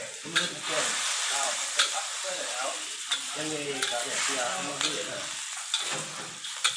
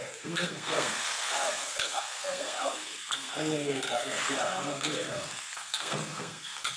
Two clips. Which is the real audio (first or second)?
first